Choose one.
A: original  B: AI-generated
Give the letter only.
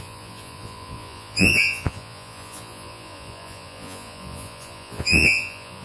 B